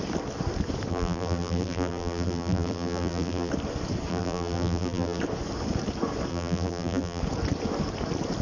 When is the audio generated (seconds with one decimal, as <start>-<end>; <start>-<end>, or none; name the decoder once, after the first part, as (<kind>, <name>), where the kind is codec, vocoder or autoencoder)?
0.9-3.5 (vocoder, BigVGAN v2); 4.1-5.2; 6.3-7.2